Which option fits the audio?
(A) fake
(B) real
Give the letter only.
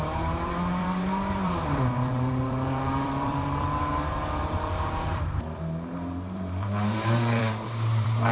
A